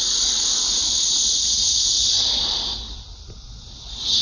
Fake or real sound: real